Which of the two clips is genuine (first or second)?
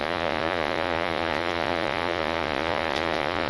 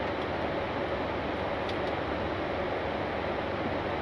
second